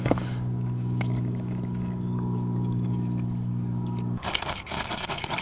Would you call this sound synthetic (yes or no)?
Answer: yes